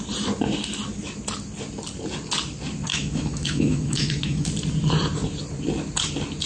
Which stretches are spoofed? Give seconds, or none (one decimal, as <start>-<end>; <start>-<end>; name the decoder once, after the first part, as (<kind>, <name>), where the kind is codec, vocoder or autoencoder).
2.9-4.5 (autoencoder, DAC-VAE)